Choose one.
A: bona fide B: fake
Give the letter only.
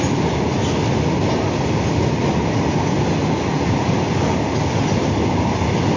A